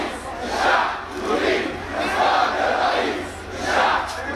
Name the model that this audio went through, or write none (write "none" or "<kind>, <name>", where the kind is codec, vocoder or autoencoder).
none